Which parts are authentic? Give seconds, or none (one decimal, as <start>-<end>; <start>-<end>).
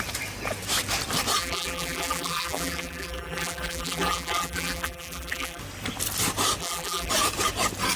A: 0.0-1.4; 5.6-6.6; 7.1-8.0